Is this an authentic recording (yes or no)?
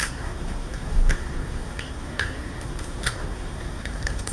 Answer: no